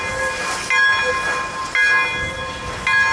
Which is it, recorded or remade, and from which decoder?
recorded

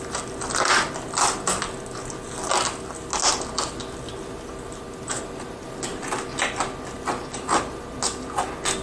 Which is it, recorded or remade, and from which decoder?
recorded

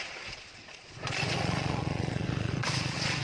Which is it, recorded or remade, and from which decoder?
remade, vocoder, Vocos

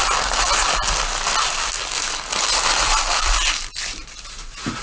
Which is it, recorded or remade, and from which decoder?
recorded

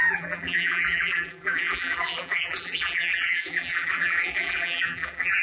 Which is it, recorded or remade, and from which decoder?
remade, vocoder, BigVGAN v2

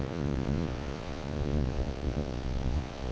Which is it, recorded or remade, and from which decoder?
remade, vocoder, Vocos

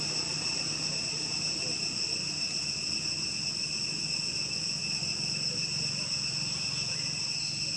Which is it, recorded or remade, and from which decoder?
recorded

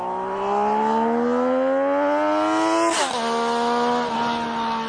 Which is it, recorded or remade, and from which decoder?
recorded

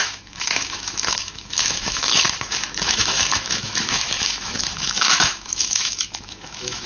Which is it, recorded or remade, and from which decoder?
remade, autoencoder, DAC-VAE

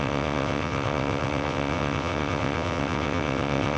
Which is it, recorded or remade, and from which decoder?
remade, vocoder, WaveNeXt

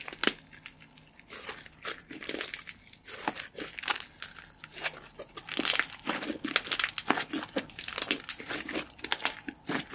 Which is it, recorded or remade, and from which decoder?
recorded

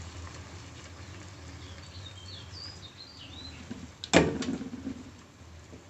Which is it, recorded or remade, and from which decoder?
recorded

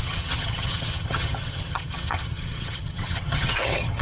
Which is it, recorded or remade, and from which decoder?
remade, vocoder, HiFi-GAN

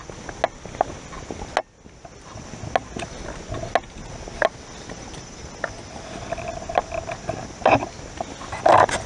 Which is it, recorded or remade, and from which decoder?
recorded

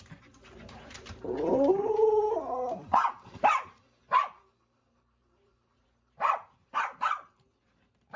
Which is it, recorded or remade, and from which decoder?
remade, vocoder, BigVGAN v2